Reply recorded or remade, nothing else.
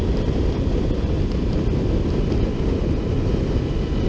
recorded